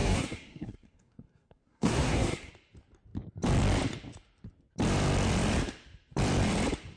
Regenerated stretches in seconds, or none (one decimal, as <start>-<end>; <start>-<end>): 0.0-2.5